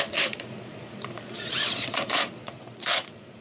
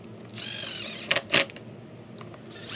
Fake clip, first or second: first